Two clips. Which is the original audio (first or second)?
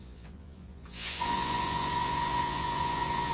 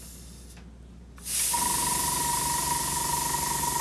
second